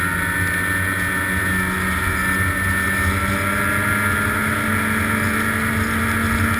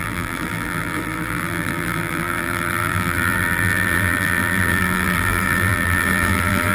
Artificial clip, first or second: second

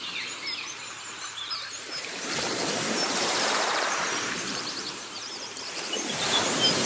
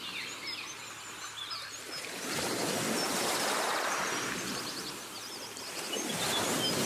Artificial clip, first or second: first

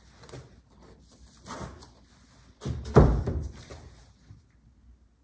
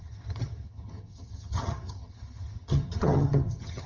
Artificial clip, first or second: second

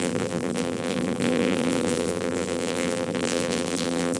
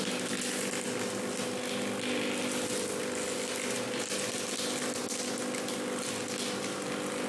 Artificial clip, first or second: first